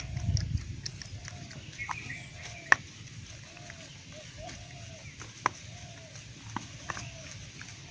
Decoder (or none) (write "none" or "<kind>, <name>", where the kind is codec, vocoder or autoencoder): none